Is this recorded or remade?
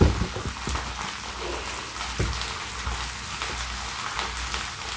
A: recorded